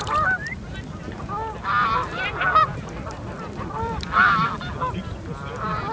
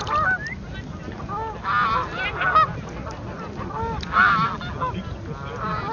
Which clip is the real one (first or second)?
second